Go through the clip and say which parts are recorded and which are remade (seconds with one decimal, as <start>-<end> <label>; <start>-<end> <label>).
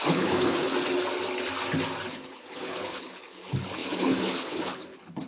0.0-0.7 remade; 0.7-2.1 recorded; 2.1-5.3 remade